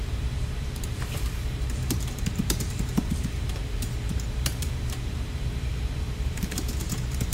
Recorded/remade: remade